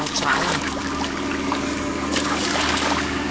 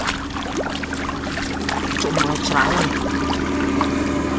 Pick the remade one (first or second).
first